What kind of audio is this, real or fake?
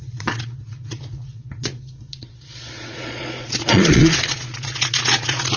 fake